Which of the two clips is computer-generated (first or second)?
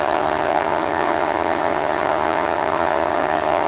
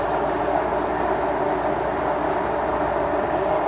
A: first